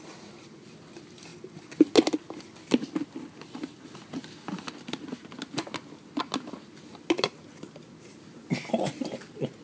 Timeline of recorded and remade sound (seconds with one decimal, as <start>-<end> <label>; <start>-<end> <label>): 0.0-9.6 recorded

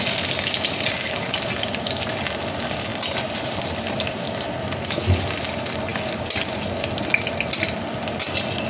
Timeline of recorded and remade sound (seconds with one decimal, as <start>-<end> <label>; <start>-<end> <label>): 0.0-8.7 recorded